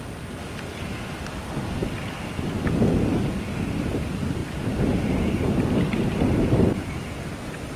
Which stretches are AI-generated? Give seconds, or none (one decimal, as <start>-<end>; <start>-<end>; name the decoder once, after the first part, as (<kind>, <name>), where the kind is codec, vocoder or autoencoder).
4.4-6.9 (vocoder, BigVGAN v2)